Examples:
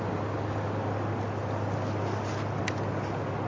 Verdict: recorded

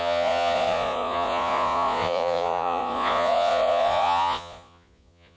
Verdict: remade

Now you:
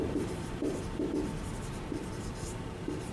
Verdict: remade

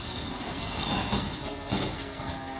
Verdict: remade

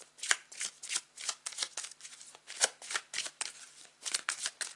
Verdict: recorded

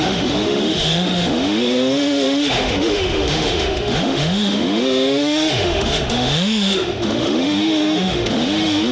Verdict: remade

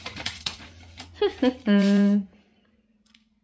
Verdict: remade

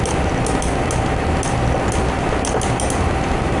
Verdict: recorded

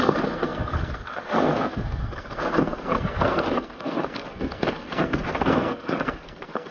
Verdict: remade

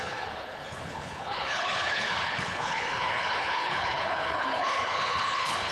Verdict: remade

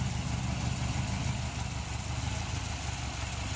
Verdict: recorded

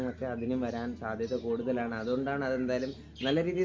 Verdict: recorded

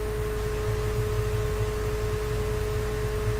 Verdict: recorded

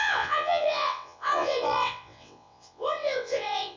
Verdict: remade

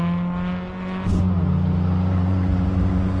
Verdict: recorded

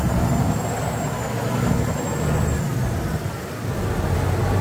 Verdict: recorded